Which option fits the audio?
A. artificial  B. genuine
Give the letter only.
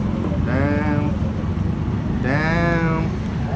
B